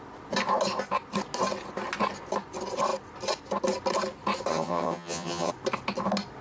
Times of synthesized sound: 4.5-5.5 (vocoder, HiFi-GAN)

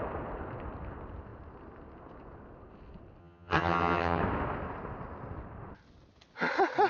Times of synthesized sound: 3.2-4.2 (vocoder, HiFi-GAN)

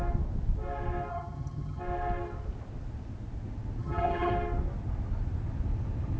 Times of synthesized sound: 1.1-1.8 (vocoder, HiFi-GAN); 3.8-4.3

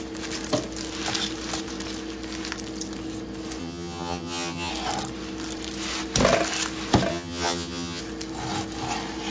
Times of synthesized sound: 3.6-4.7 (vocoder, HiFi-GAN); 7.1-8.0

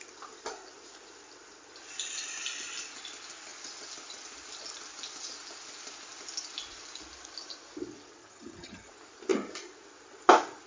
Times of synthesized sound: 8.2-8.9 (vocoder, HiFi-GAN)